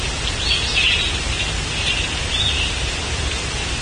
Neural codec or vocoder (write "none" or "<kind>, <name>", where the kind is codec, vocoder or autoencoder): none